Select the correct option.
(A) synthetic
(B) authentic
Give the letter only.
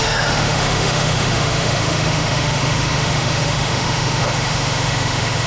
A